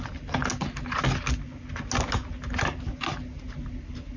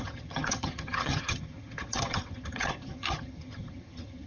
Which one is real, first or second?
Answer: first